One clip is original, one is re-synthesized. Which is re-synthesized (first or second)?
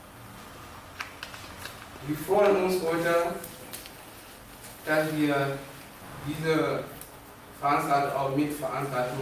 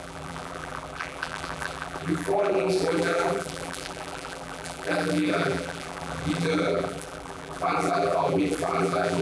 second